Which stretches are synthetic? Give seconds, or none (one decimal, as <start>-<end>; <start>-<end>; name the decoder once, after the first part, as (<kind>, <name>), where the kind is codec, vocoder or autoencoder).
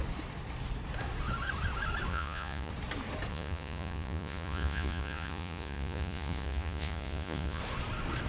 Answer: 2.1-2.7 (vocoder, Vocos); 3.3-7.6